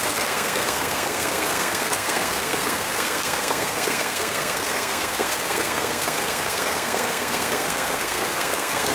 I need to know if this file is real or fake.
fake